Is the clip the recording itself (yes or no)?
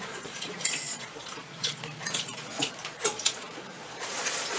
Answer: no